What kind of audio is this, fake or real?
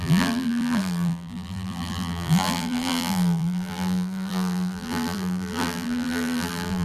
fake